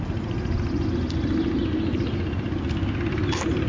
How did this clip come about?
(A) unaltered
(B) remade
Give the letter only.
A